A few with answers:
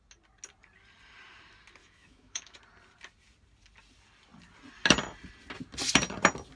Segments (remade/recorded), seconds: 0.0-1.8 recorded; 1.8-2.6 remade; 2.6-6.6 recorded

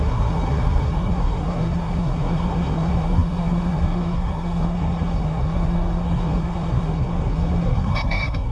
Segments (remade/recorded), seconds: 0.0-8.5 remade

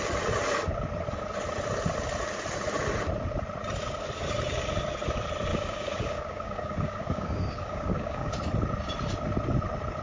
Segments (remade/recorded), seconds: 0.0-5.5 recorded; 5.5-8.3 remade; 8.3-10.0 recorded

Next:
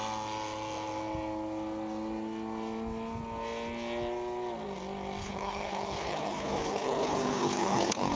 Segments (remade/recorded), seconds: 0.0-5.2 recorded; 5.2-8.2 remade

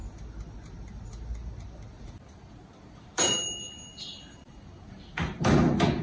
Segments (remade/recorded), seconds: 0.0-6.0 recorded

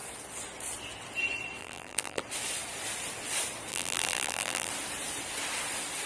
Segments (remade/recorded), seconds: 0.0-1.6 recorded; 1.6-2.2 remade; 2.2-3.7 recorded; 3.7-4.7 remade; 4.7-6.1 recorded